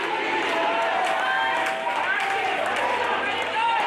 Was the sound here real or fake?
real